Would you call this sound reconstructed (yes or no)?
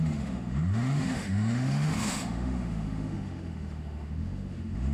yes